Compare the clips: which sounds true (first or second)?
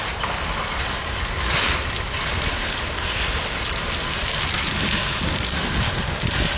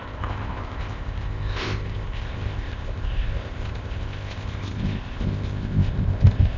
first